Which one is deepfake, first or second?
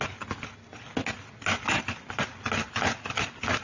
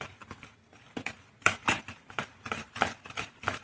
second